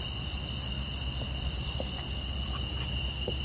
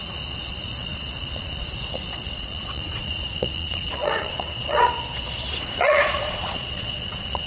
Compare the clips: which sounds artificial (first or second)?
second